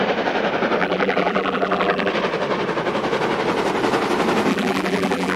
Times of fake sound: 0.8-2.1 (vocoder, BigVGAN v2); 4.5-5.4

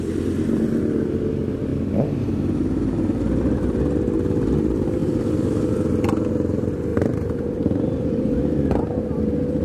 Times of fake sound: 5.0-5.7 (vocoder, BigVGAN v2); 6.9-9.2

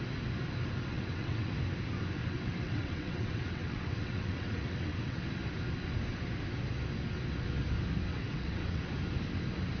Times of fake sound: 0.9-1.6 (vocoder, WaveNeXt); 2.2-5.2; 8.1-8.8

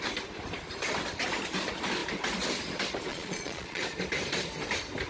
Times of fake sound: 3.1-3.8 (vocoder, Vocos)

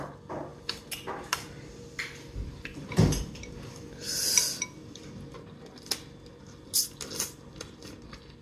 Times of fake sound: 2.7-3.7 (vocoder, BigVGAN v2)